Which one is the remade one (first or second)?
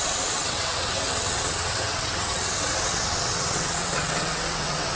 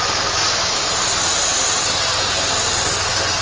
first